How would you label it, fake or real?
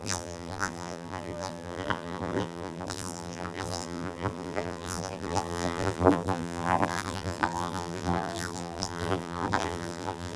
fake